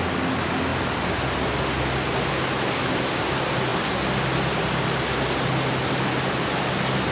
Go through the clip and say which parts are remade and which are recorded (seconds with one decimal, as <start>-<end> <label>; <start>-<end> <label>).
0.0-7.1 recorded